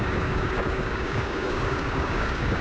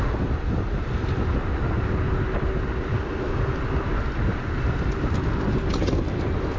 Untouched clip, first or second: second